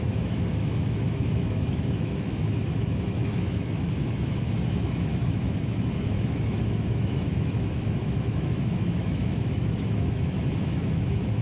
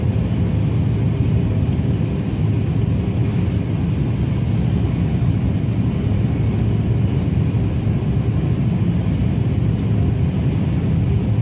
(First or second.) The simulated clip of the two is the first